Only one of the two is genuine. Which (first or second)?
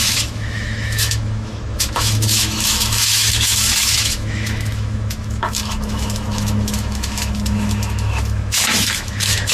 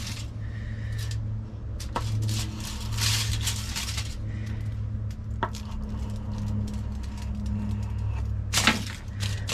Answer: second